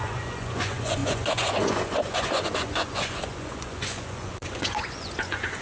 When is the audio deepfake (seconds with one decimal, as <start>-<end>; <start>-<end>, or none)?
0.0-5.6